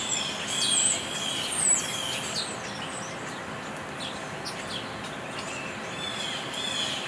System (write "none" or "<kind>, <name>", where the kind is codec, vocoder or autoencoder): none